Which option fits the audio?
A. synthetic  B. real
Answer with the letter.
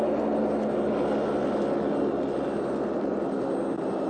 B